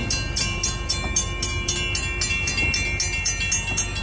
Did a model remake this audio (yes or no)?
no